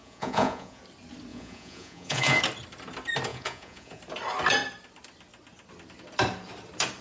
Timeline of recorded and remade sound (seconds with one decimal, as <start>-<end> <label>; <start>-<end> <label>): 0.0-0.8 remade; 0.8-1.3 recorded; 1.3-2.4 remade; 2.4-3.3 recorded; 3.3-4.0 remade; 4.0-7.0 recorded